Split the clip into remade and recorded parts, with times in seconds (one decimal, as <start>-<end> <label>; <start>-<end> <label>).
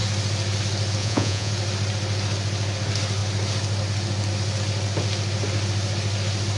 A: 0.0-1.0 recorded; 1.0-1.5 remade; 1.5-6.6 recorded